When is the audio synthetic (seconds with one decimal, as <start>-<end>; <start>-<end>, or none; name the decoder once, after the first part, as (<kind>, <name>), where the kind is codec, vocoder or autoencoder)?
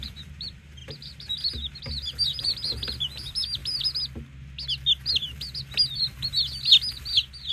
0.0-3.6 (vocoder, BigVGAN v2)